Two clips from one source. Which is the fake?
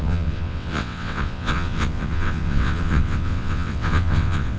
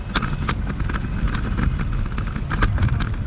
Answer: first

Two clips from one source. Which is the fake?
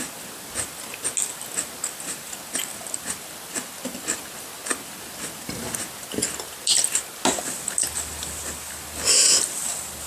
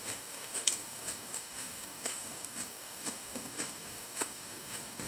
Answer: second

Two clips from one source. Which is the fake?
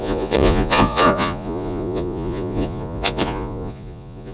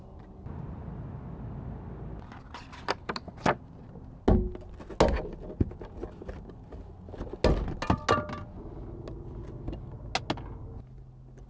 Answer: first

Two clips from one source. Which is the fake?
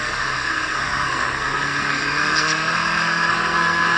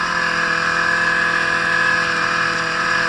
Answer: first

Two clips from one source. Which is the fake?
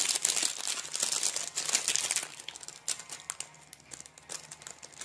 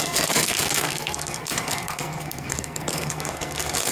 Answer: second